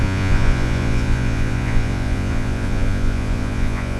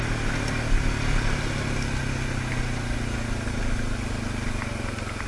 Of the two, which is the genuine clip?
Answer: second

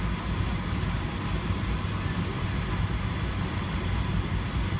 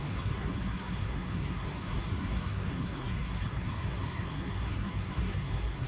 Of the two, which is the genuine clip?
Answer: first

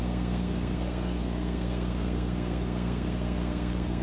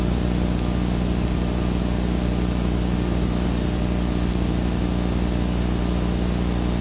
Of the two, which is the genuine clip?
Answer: second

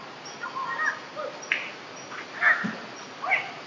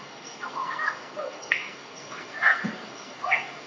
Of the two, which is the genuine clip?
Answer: first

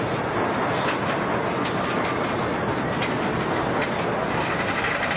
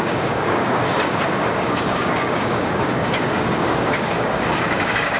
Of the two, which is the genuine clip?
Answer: first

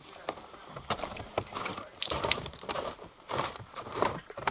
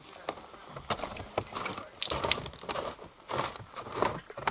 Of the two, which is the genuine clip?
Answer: second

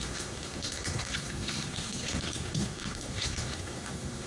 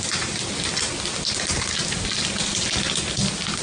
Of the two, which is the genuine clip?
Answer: second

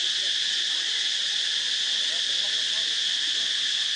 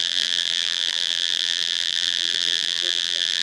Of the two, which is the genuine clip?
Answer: first